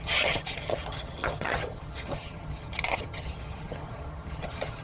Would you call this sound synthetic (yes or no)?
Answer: yes